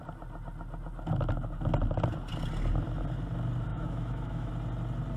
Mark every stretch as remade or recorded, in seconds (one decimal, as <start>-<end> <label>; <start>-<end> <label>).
0.0-3.7 recorded; 3.7-4.5 remade; 4.5-5.2 recorded